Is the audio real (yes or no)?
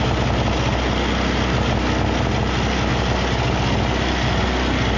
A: yes